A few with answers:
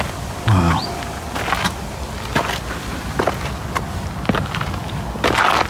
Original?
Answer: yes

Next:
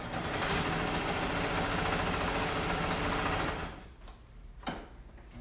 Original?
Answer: yes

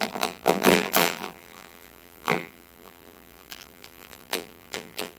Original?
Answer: no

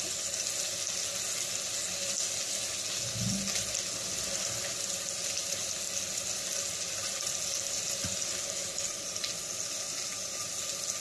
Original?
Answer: yes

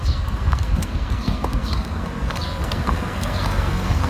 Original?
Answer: no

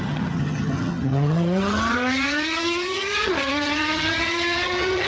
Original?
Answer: no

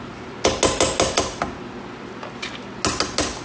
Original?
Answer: yes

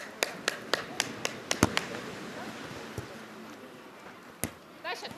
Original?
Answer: yes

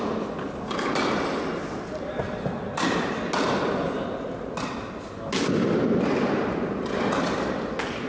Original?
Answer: yes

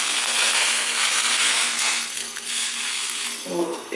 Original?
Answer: no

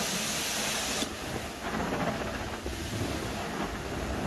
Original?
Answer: yes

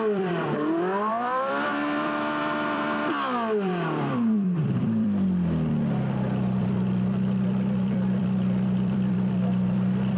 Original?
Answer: no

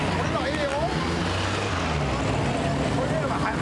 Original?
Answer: yes